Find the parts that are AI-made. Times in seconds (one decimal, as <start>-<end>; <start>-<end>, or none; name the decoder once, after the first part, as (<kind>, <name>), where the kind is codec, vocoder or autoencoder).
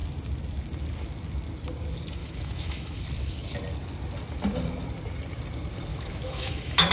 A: 2.2-3.0 (autoencoder, DAC-VAE); 5.9-6.9